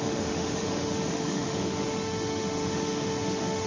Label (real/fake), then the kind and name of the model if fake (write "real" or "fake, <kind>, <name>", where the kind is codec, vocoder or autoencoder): fake, autoencoder, DAC-VAE